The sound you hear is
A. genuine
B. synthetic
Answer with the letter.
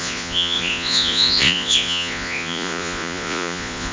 B